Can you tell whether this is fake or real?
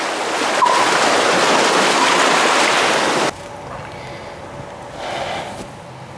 real